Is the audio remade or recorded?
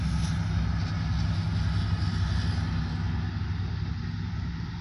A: recorded